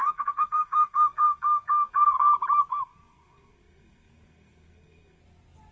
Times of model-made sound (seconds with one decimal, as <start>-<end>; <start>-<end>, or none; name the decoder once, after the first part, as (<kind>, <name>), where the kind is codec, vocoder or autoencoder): 0.0-2.3 (codec, SNAC); 2.7-5.2